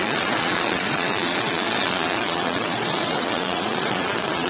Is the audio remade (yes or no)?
yes